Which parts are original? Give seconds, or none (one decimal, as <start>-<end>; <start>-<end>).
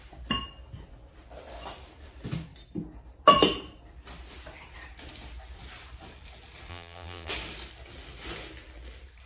0.0-6.7; 7.3-9.3